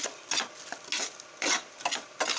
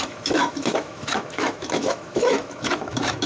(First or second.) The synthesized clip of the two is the second